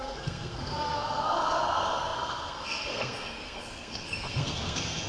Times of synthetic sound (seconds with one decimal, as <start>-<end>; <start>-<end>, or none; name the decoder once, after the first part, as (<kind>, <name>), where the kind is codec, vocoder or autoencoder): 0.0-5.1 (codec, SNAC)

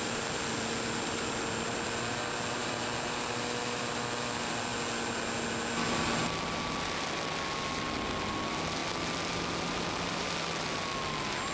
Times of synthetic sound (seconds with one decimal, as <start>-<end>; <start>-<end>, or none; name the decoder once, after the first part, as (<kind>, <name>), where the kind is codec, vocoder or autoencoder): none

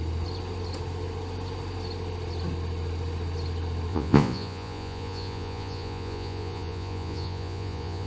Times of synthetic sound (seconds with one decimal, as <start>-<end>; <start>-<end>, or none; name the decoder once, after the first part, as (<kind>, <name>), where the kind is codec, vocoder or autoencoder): 3.9-8.1 (vocoder, Vocos)

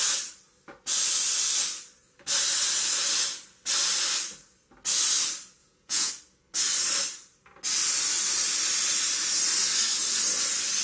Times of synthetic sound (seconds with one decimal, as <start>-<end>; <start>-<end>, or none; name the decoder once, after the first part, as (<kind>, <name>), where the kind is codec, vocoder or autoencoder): 5.6-6.1 (vocoder, Vocos)

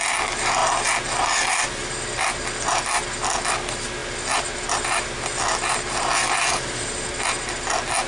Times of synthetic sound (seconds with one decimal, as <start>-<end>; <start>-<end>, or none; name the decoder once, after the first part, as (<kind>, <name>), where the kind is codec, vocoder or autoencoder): none

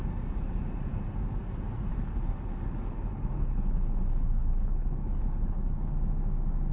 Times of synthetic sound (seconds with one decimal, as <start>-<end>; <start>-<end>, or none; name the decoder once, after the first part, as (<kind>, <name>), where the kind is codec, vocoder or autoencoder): 1.9-5.9 (codec, HILCodec)

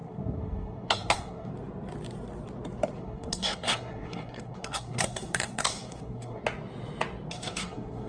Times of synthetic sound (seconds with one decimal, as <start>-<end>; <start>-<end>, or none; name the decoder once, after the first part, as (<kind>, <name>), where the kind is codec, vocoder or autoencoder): 0.0-1.5 (codec, SNAC); 3.0-6.4; 7.3-8.1